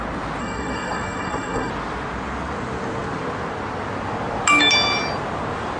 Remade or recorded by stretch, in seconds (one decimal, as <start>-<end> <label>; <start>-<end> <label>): 0.0-0.4 recorded; 0.4-1.7 remade; 1.7-5.8 recorded